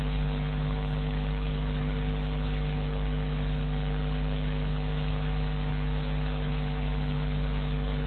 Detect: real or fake fake